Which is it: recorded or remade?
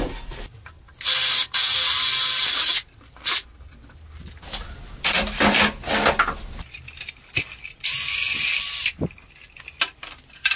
recorded